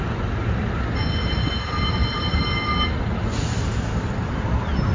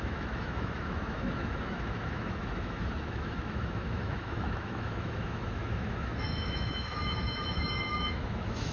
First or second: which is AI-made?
second